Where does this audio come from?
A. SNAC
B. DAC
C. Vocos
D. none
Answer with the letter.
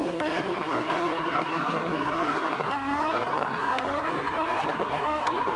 A